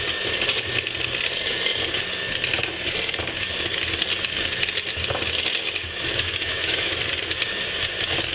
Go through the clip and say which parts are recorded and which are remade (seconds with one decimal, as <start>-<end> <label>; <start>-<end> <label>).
0.0-5.8 recorded; 5.8-6.9 remade; 6.9-8.3 recorded